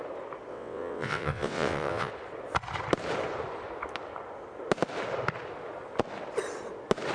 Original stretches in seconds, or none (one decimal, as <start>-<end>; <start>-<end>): 0.0-0.5; 2.1-7.1